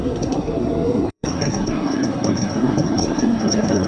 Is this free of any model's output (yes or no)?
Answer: no